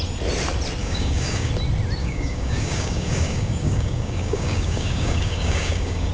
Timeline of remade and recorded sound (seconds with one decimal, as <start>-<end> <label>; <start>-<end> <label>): 0.0-0.8 recorded; 0.8-1.5 remade; 1.5-2.0 recorded; 2.0-6.1 remade